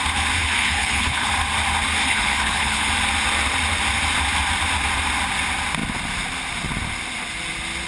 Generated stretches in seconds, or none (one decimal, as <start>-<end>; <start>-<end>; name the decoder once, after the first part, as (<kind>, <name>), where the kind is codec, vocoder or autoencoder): 0.4-1.3 (codec, HILCodec); 2.0-2.9